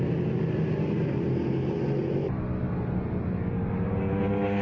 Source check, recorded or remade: recorded